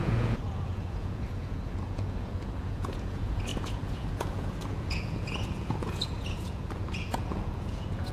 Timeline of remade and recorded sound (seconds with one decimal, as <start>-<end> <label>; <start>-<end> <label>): 0.0-8.1 remade